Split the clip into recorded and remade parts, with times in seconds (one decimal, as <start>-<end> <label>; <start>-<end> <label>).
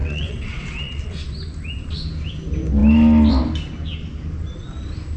0.0-1.1 remade; 1.1-5.2 recorded